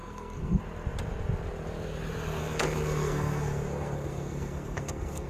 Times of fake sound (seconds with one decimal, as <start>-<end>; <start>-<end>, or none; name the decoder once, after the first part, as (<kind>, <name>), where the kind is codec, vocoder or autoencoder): 0.0-0.6 (codec, SNAC); 2.4-5.3